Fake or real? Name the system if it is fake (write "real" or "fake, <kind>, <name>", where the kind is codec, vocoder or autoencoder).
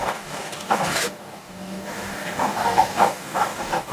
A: fake, codec, DAC